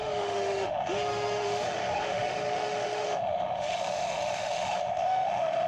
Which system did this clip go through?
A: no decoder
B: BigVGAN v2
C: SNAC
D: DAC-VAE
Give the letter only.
D